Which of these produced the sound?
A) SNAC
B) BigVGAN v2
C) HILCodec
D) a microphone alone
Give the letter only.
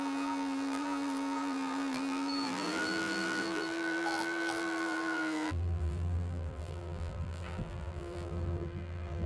B